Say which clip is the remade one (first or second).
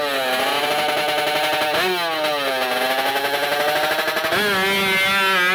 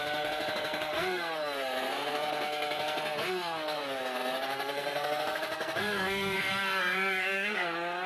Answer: second